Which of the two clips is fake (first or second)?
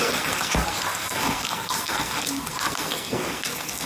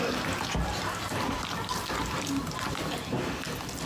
first